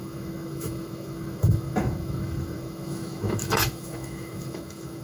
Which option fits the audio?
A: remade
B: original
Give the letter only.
A